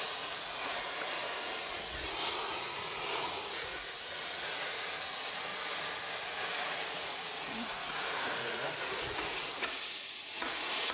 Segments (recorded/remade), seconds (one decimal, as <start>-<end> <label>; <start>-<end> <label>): 0.0-5.5 remade; 5.5-6.3 recorded; 6.3-10.9 remade